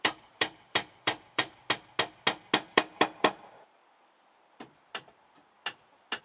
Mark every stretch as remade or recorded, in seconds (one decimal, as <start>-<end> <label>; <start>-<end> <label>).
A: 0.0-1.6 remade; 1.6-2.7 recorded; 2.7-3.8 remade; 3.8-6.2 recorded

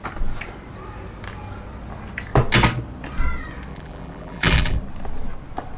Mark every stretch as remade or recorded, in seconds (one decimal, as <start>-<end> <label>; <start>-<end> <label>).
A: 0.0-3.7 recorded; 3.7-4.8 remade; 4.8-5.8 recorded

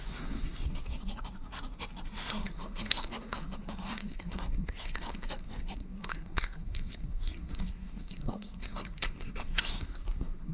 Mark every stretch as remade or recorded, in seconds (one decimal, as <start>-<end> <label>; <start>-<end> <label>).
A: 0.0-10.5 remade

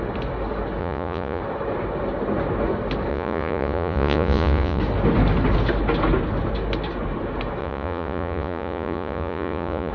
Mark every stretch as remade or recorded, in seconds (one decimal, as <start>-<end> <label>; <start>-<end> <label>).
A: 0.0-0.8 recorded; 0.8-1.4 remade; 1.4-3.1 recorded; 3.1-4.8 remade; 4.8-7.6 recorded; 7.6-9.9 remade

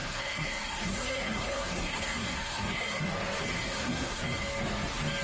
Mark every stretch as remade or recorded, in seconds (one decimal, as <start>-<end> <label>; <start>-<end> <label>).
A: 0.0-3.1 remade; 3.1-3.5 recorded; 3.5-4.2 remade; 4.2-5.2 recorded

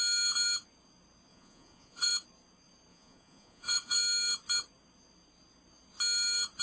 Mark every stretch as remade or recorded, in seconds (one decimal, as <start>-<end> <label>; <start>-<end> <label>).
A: 0.0-1.3 recorded; 1.3-2.1 remade; 2.1-2.9 recorded; 2.9-4.0 remade; 4.0-6.6 recorded

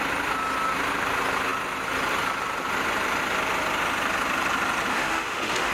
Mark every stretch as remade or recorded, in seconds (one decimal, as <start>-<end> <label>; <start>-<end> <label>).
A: 0.0-4.9 recorded; 4.9-5.7 remade

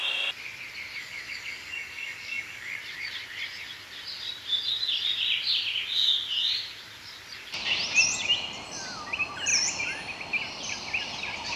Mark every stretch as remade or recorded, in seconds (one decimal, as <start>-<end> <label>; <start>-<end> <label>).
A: 0.0-1.0 recorded; 1.0-2.8 remade; 2.8-11.6 recorded